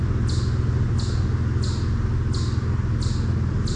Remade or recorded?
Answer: recorded